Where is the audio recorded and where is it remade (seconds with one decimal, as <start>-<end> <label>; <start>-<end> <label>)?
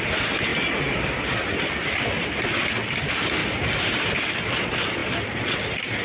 0.0-3.4 recorded; 3.4-4.2 remade; 4.2-6.0 recorded